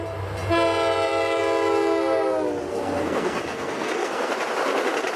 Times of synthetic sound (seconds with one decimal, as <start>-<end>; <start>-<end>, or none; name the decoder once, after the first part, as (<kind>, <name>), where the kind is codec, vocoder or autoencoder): 2.7-4.3 (codec, SNAC)